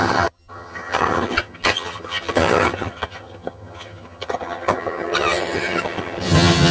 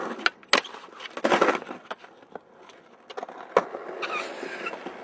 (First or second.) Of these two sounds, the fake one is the first